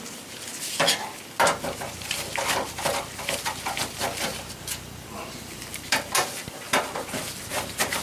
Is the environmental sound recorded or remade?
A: recorded